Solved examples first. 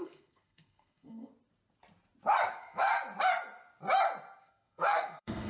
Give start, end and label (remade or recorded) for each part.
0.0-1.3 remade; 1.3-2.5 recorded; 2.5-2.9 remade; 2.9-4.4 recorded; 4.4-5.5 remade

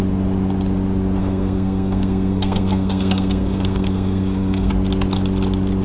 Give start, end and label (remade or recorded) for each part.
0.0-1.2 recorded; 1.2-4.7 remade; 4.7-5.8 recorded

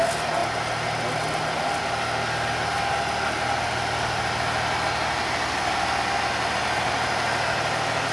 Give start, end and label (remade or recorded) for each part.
0.0-8.1 recorded